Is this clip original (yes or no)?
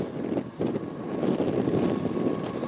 yes